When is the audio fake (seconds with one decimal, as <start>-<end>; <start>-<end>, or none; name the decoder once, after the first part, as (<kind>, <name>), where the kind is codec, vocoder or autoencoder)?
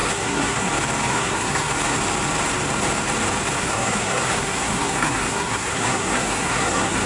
0.0-0.7 (codec, SNAC); 1.1-1.7; 3.6-7.1